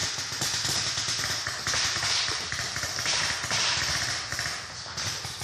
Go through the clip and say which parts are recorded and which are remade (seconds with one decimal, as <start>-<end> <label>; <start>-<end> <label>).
0.0-5.4 recorded